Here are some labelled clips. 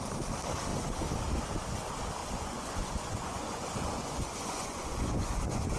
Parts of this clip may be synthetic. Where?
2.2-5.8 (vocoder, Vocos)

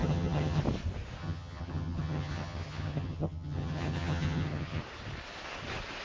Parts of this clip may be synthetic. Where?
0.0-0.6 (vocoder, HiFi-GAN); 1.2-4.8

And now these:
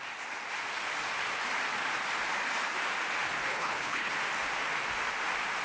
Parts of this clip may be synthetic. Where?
3.5-4.1 (codec, HILCodec)

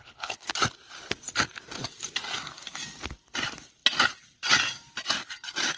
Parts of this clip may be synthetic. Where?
0.0-0.5 (codec, HILCodec)

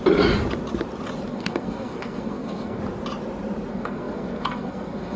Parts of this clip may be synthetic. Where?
1.3-2.8 (codec, SNAC); 3.7-5.2

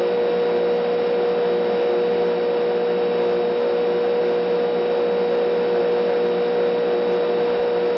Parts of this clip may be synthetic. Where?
none

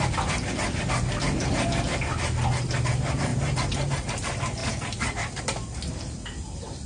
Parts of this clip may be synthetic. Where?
3.3-4.1 (vocoder, BigVGAN v2)